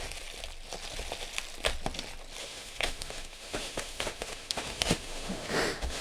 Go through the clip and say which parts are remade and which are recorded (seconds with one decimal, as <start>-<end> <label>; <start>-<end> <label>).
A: 0.0-2.4 recorded; 2.4-6.0 remade